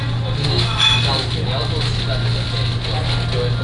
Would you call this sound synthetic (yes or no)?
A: no